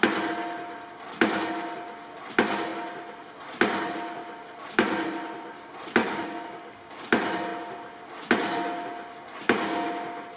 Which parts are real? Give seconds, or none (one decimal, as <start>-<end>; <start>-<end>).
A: 0.0-6.0; 6.9-10.4